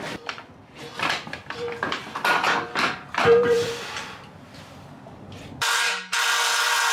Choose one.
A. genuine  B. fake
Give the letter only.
B